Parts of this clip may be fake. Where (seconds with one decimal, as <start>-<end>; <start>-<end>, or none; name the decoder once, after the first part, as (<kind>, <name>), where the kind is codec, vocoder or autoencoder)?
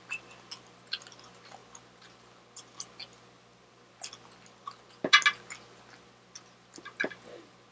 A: none